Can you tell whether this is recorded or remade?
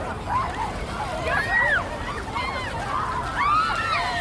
recorded